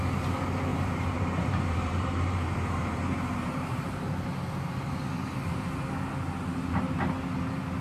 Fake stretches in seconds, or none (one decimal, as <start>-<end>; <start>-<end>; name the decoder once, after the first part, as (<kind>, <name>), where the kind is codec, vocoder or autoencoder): 0.7-4.9 (vocoder, BigVGAN v2)